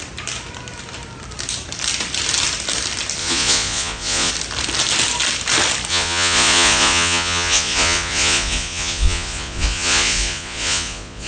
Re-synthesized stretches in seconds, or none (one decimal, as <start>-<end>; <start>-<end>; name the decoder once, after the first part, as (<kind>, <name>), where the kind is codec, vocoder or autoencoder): 3.2-4.3 (vocoder, Vocos); 5.9-11.3